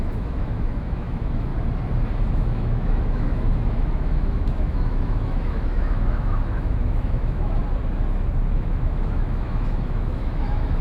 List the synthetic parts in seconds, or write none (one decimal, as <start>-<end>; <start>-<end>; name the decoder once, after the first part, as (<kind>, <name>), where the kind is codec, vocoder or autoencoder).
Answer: 0.0-1.5 (autoencoder, DAC-VAE); 2.3-7.6; 8.5-10.8